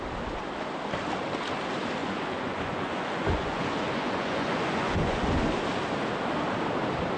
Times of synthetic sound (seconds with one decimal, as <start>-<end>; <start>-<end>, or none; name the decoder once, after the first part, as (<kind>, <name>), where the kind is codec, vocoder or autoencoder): 2.0-5.4 (vocoder, Vocos)